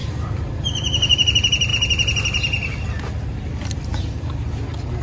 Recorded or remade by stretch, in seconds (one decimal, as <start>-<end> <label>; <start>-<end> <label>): 0.0-0.5 remade; 0.5-3.6 recorded; 3.6-4.6 remade; 4.6-5.0 recorded